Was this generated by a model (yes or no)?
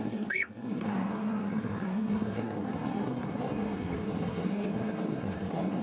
yes